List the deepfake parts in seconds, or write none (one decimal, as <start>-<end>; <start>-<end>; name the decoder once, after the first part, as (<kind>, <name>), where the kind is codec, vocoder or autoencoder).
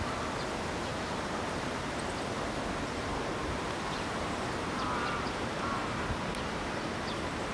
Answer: 0.9-1.9 (vocoder, BigVGAN v2); 3.4-5.8